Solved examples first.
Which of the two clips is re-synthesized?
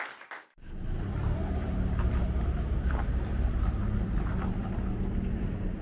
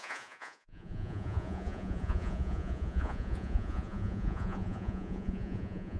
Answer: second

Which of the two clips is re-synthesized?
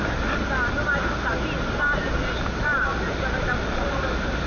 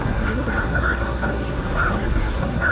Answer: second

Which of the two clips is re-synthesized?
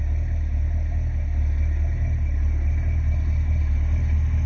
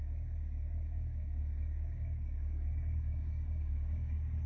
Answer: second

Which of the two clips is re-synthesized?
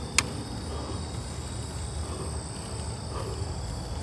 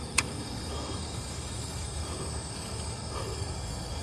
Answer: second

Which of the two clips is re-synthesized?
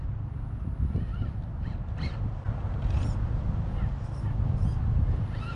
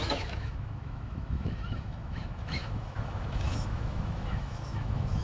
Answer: second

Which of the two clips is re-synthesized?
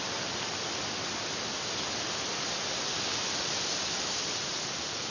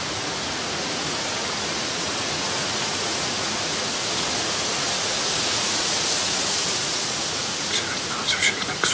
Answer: second